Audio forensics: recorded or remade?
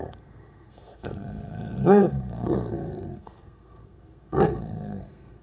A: remade